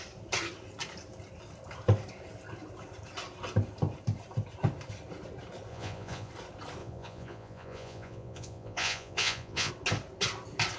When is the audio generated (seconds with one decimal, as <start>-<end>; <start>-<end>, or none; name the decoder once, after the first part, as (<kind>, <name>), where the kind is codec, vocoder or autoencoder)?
5.7-6.3 (vocoder, Vocos); 6.8-9.7